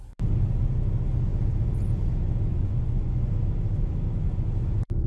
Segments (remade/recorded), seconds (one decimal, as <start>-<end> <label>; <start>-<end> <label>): 0.0-2.5 recorded; 2.5-3.3 remade; 3.3-5.1 recorded